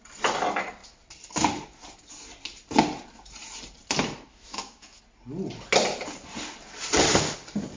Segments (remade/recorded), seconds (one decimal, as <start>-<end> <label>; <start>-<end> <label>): 0.0-4.3 recorded; 4.3-5.0 remade; 5.0-7.8 recorded